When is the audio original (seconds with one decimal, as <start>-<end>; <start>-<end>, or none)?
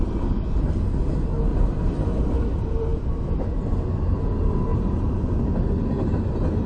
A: 0.0-1.5; 2.2-4.7; 5.2-6.7